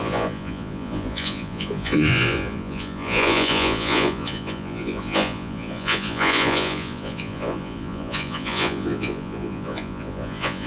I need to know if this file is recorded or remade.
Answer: remade